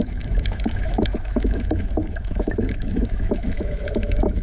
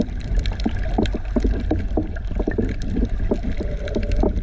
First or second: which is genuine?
second